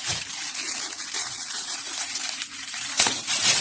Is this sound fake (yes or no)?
yes